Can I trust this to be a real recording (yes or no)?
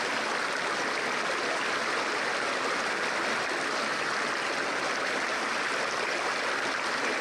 yes